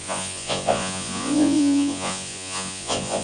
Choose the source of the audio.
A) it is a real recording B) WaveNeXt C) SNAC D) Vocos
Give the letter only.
D